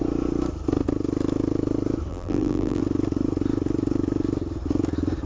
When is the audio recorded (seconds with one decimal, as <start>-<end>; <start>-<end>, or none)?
0.0-2.1; 2.8-5.3